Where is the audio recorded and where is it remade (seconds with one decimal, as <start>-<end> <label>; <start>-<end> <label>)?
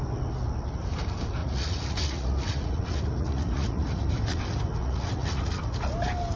0.0-1.4 recorded; 1.4-4.1 remade; 4.1-4.8 recorded; 4.8-5.6 remade; 5.6-6.4 recorded